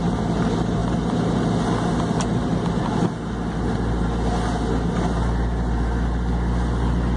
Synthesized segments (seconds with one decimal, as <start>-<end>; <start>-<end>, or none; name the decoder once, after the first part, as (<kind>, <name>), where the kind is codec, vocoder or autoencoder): none